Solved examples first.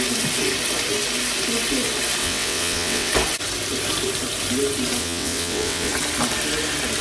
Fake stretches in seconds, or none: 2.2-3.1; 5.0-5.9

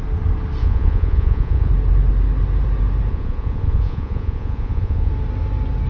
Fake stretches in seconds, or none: 0.6-1.7; 3.1-5.1

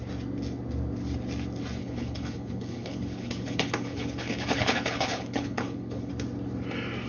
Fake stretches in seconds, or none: 1.8-6.1

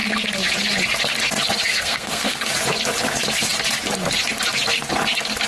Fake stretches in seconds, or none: 1.7-2.5

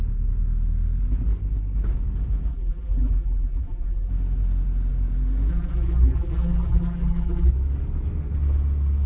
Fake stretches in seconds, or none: 2.5-4.1; 5.5-7.5

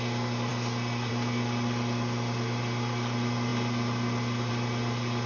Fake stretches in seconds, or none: none

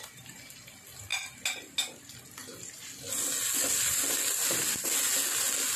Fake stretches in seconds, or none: none